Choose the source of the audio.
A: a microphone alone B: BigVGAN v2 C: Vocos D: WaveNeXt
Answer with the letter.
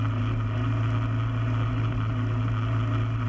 A